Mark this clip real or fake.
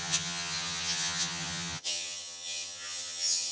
fake